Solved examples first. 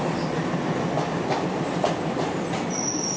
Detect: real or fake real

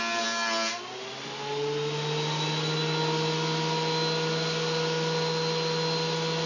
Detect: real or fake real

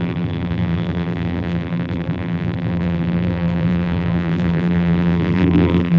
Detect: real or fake fake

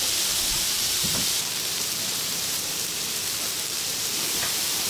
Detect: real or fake fake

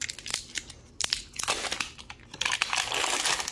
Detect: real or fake real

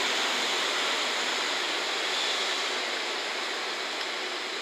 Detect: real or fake real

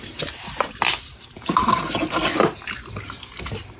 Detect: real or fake fake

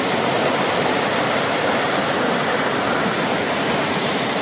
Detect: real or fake fake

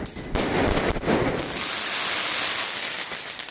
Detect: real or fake real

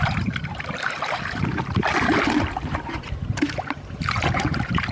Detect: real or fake fake